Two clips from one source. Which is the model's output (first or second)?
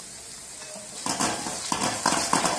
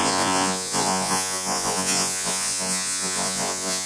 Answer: second